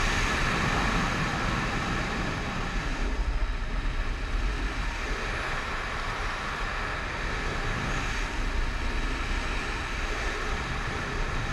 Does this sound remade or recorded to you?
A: recorded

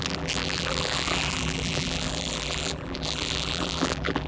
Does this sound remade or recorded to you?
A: remade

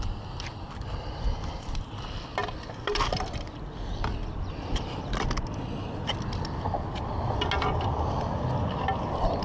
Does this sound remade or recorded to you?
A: recorded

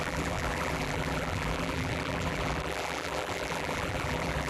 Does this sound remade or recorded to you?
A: remade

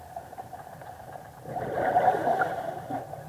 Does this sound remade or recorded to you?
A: remade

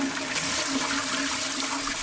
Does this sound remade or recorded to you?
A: recorded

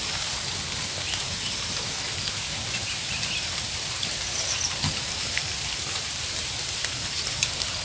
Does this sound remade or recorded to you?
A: remade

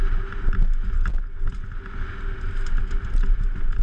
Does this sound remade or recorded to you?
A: recorded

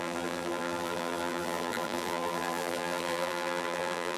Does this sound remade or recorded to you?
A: remade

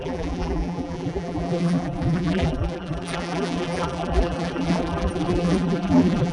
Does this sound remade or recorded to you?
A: remade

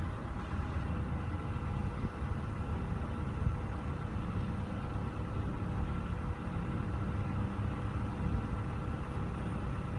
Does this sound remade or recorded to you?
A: recorded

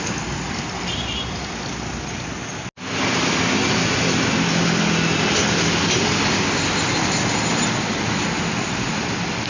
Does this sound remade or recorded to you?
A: recorded